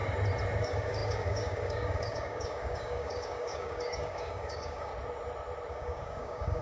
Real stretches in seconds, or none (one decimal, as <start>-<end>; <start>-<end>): 0.0-0.6; 4.9-5.7